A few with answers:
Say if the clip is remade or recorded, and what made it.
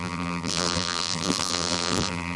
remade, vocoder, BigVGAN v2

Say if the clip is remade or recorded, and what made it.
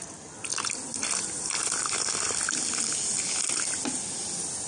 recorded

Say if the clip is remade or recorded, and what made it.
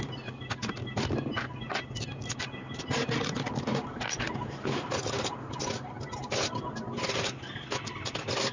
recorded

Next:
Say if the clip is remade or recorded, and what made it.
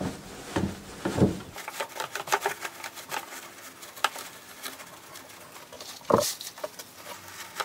recorded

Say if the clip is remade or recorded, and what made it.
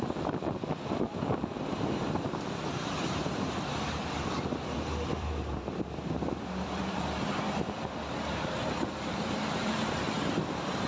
remade, vocoder, BigVGAN v2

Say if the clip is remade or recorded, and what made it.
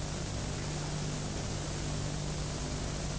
recorded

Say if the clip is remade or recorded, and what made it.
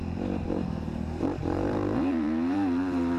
remade, vocoder, BigVGAN v2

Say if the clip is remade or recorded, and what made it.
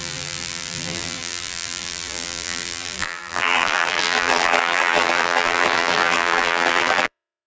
remade, vocoder, BigVGAN v2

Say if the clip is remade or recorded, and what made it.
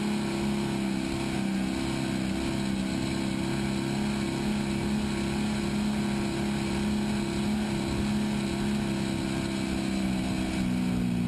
recorded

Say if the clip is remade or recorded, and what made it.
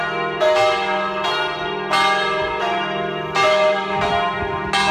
recorded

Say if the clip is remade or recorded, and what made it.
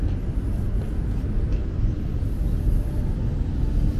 recorded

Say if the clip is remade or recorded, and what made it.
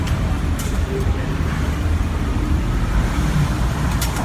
remade, vocoder, BigVGAN v2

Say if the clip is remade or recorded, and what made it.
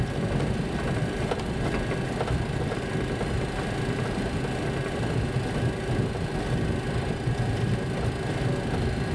recorded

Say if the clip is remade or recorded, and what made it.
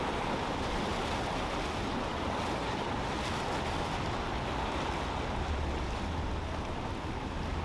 recorded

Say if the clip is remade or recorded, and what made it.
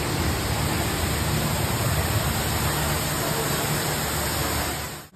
recorded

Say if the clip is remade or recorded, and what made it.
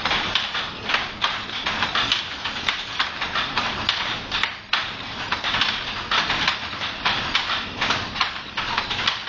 remade, vocoder, BigVGAN v2